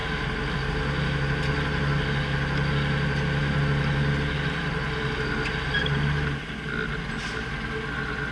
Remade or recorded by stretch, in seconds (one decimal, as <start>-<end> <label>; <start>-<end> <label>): 0.0-8.3 recorded